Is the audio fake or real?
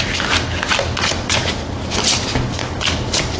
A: real